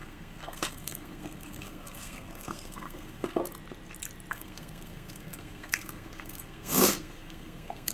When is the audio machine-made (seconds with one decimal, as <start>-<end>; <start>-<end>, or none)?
0.0-3.4; 4.3-7.9